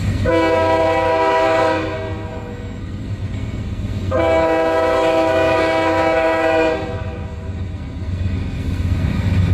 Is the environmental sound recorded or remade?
remade